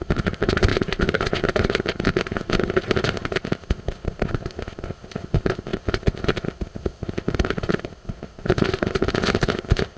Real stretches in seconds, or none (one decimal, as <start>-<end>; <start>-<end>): none